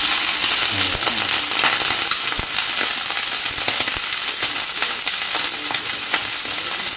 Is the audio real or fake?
real